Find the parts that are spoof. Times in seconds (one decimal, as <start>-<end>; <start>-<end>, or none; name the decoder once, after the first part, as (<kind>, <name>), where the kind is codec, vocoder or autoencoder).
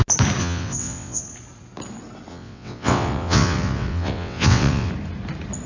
0.4-1.2 (vocoder, WaveNeXt); 2.3-4.9